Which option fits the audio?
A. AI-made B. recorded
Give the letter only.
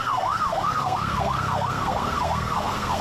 A